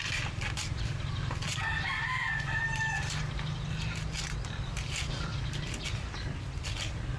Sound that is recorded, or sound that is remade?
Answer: remade